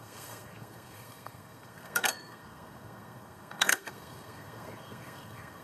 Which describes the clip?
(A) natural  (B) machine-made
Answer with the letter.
B